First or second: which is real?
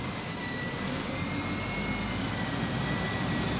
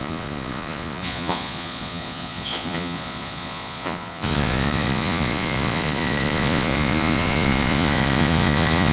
first